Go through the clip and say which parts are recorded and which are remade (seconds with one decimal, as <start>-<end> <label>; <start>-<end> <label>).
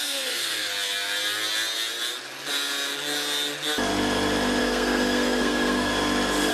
0.0-0.7 remade; 0.7-4.6 recorded; 4.6-5.9 remade; 5.9-6.5 recorded